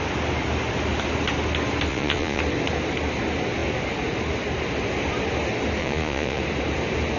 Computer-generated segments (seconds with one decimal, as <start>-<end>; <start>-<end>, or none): 1.9-2.4; 5.8-6.4